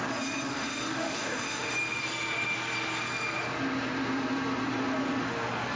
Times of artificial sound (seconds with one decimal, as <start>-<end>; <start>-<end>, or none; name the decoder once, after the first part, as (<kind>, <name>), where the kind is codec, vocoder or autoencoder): 0.5-1.7 (autoencoder, DAC-VAE)